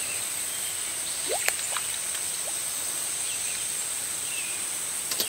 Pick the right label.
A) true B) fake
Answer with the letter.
A